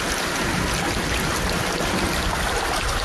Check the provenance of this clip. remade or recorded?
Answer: recorded